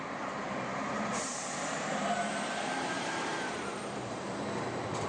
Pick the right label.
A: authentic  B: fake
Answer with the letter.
B